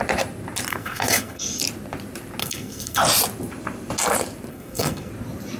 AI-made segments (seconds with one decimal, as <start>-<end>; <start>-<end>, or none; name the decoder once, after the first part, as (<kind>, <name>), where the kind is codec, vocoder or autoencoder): 0.7-1.6 (codec, SNAC); 2.4-3.0; 4.5-5.1